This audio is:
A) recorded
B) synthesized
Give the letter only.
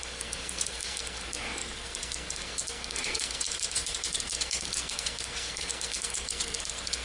B